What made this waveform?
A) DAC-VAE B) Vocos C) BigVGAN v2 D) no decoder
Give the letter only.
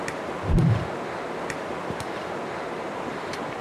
D